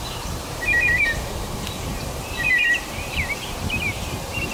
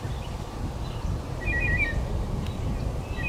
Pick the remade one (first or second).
first